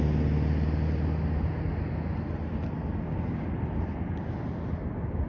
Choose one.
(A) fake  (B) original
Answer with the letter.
B